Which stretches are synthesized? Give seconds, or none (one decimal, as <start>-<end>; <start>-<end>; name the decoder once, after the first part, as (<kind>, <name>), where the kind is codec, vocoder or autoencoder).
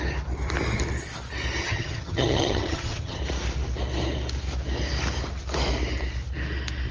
1.6-3.2 (vocoder, HiFi-GAN)